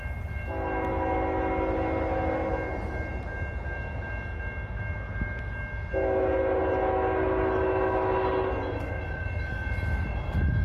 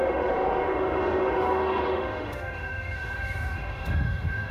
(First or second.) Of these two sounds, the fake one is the second